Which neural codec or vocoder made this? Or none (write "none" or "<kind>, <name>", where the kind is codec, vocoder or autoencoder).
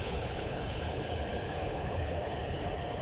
codec, HILCodec